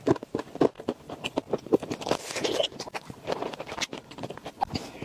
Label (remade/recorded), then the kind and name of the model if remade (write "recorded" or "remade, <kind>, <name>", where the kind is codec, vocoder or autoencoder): recorded